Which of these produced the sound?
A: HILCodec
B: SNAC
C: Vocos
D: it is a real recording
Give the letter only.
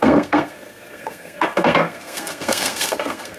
B